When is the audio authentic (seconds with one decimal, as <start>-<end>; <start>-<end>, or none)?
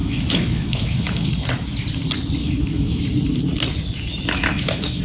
1.3-2.4; 3.0-4.1